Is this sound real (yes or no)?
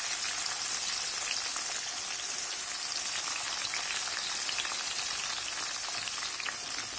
yes